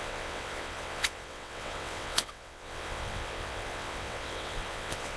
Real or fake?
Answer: fake